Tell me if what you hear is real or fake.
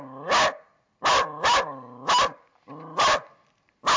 real